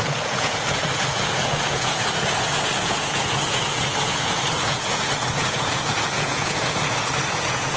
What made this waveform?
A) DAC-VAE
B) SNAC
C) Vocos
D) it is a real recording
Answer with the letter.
C